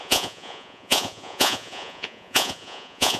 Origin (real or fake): fake